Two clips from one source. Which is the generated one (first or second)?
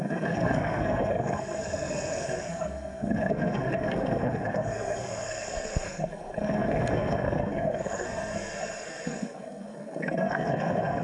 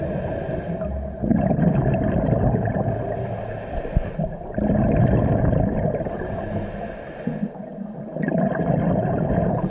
first